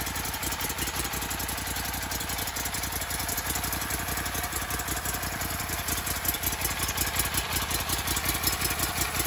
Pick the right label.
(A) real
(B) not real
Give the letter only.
B